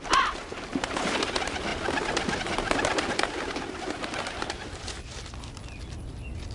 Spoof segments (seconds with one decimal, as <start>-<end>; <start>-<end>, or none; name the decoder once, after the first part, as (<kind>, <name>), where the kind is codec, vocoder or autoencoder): none